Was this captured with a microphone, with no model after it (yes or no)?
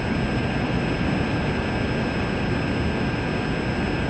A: yes